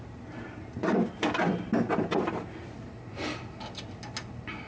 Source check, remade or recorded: recorded